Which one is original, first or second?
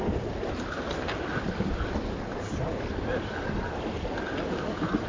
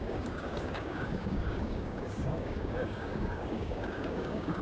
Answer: first